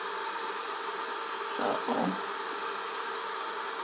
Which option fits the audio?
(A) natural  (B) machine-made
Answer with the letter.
A